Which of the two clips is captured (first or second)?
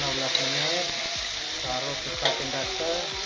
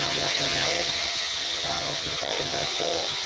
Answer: first